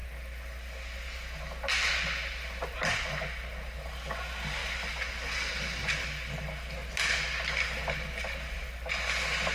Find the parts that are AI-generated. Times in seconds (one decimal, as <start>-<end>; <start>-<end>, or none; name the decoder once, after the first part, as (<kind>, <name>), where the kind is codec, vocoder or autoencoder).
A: none